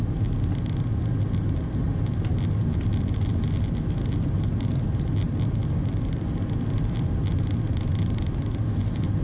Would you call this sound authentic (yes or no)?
yes